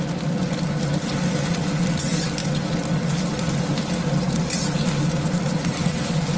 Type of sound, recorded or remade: recorded